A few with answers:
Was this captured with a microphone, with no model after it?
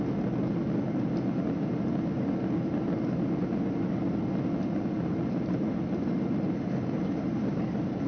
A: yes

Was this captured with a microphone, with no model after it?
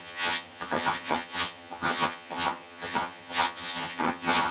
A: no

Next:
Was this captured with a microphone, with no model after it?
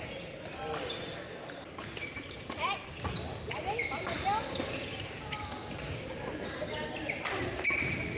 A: yes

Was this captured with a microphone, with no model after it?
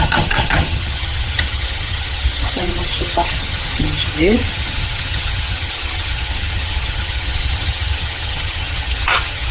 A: no